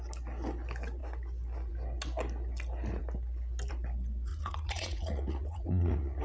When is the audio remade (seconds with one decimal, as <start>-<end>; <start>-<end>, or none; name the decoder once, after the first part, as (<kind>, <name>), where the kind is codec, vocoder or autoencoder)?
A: 4.3-6.2 (vocoder, Vocos)